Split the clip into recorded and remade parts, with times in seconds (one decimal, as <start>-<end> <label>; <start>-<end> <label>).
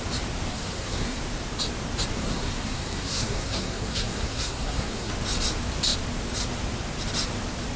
0.0-0.5 recorded; 0.5-1.2 remade; 1.2-2.2 recorded; 2.2-5.1 remade; 5.1-7.8 recorded